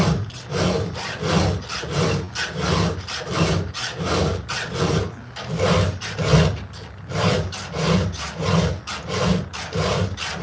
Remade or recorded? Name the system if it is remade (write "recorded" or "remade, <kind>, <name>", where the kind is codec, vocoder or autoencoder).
recorded